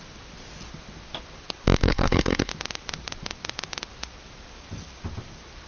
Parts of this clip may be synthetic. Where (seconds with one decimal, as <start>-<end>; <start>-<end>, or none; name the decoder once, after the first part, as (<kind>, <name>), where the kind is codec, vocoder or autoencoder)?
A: 1.8-2.5 (codec, HILCodec)